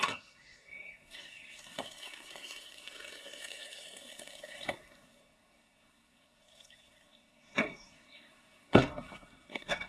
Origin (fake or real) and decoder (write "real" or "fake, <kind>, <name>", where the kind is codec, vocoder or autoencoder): fake, codec, SNAC